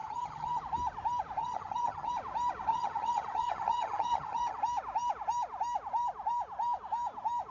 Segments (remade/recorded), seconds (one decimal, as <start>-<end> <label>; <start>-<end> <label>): 0.0-0.6 remade; 0.6-1.4 recorded; 1.4-2.1 remade; 2.1-2.7 recorded; 2.7-4.6 remade; 4.6-7.5 recorded

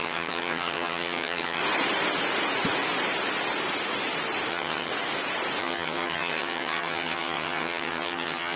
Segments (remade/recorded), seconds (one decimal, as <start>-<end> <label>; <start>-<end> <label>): 0.0-1.6 remade; 1.6-4.5 recorded; 4.5-4.9 remade; 4.9-5.6 recorded; 5.6-8.6 remade

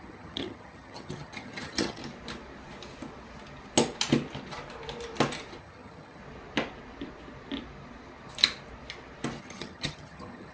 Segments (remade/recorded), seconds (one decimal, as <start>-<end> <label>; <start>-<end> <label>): 0.0-2.0 remade; 2.0-5.6 recorded; 5.6-6.2 remade; 6.2-9.4 recorded; 9.4-10.5 remade

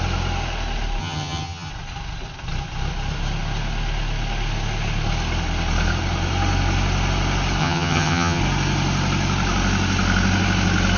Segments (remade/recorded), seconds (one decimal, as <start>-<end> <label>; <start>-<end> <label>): 0.0-1.0 recorded; 1.0-1.7 remade; 1.7-7.6 recorded; 7.6-8.4 remade; 8.4-11.0 recorded